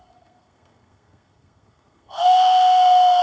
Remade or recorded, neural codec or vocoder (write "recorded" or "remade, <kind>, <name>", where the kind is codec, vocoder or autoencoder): remade, codec, SNAC